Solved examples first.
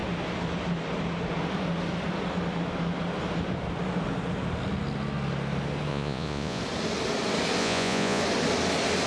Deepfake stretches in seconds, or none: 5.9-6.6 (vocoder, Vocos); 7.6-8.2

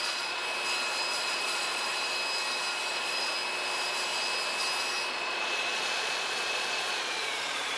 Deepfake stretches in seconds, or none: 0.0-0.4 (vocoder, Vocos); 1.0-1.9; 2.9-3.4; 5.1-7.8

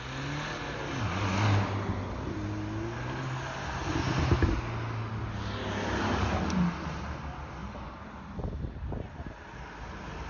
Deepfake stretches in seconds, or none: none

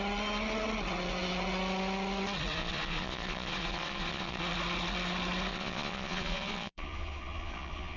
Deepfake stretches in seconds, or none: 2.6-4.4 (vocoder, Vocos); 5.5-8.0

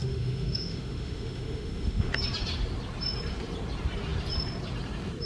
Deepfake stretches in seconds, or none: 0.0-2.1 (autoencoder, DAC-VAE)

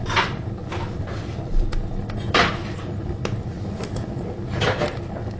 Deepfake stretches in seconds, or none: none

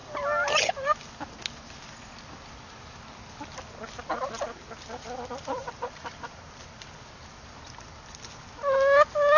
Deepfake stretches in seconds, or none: 5.6-6.9 (vocoder, BigVGAN v2)

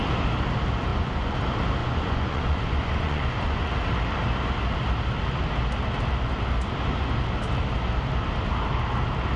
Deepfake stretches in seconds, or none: 0.9-1.4 (vocoder, Vocos); 1.8-3.7